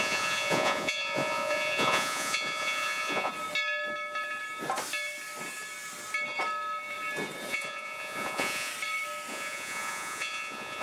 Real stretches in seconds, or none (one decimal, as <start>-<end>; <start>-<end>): 3.3-7.5; 8.7-9.3